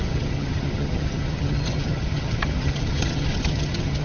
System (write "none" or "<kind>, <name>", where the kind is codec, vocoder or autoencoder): vocoder, HiFi-GAN